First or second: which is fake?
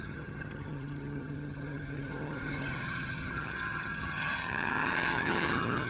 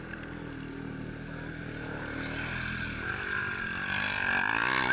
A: first